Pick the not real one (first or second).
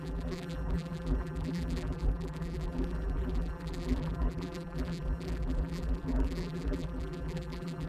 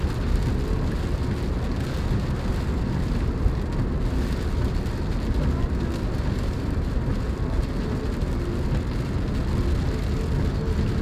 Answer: first